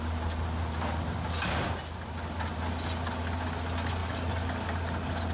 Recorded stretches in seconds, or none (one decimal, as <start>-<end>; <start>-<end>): 0.0-5.3